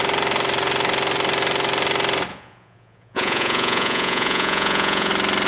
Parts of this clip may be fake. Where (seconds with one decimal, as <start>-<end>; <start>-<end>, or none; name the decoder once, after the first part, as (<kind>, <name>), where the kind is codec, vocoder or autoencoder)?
2.3-5.1 (vocoder, Vocos)